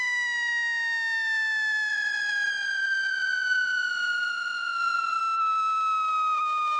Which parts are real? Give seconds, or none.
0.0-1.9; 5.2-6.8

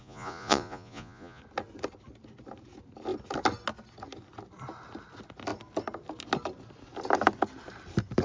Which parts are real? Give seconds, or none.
1.4-8.2